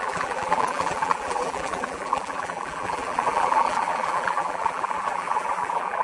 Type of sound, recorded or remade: remade